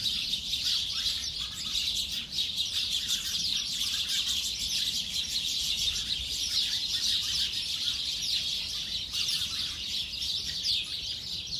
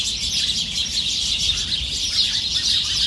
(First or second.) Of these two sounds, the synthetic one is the first